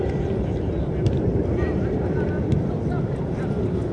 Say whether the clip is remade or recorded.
recorded